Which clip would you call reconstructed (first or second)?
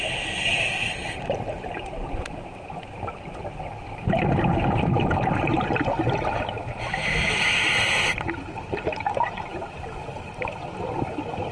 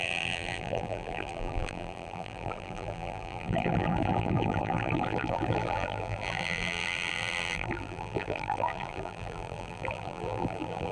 second